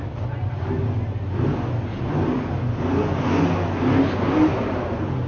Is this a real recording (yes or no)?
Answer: yes